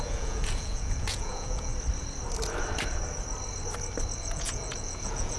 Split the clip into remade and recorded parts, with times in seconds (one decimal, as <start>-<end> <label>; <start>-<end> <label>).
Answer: 0.0-1.7 remade; 1.7-4.2 recorded; 4.2-5.4 remade